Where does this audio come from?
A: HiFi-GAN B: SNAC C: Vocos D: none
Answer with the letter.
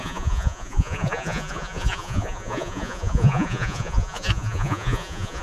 C